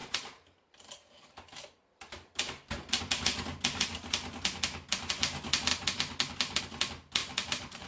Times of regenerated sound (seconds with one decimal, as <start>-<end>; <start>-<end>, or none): 0.0-3.0; 7.2-7.9